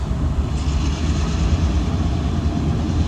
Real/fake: real